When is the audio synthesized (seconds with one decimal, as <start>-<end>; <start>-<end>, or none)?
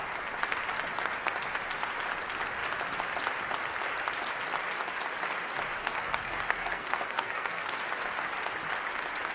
5.8-7.8